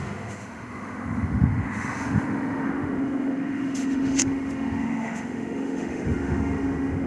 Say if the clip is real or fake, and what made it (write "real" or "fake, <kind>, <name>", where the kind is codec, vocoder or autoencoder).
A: fake, autoencoder, DAC-VAE